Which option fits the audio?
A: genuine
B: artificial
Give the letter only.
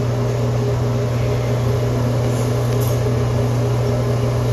A